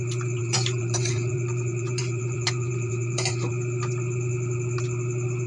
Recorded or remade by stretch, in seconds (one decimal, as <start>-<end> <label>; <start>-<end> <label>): 0.0-0.4 recorded; 0.4-3.5 remade; 3.5-5.5 recorded